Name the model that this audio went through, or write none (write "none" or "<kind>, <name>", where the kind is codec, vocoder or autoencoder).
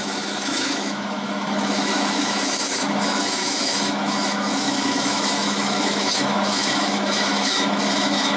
autoencoder, DAC-VAE